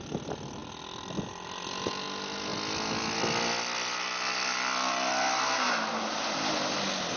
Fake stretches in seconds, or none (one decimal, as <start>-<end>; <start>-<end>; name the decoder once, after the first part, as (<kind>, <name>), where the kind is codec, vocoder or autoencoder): none